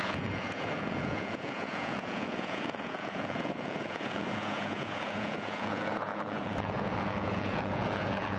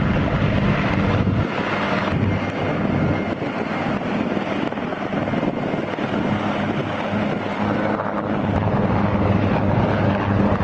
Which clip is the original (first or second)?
second